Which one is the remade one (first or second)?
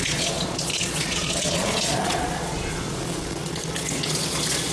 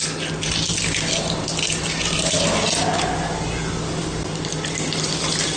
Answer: first